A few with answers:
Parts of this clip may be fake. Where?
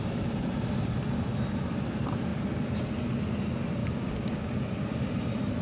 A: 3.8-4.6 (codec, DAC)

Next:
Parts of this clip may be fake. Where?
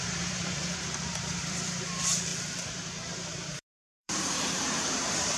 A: 0.0-5.4 (vocoder, BigVGAN v2)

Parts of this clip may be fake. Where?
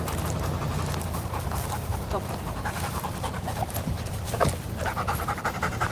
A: 1.9-5.4 (vocoder, BigVGAN v2)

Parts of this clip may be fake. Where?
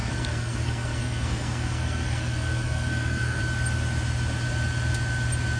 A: 0.0-3.4 (codec, SNAC)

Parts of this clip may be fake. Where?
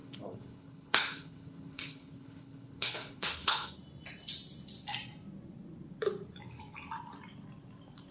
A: 0.0-3.7 (codec, HILCodec)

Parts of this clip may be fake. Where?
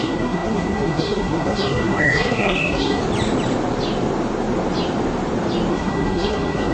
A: 0.0-3.0 (codec, SNAC); 5.7-6.7